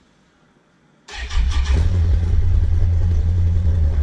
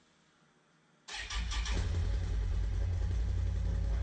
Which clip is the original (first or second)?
second